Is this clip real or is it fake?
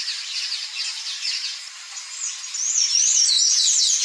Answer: real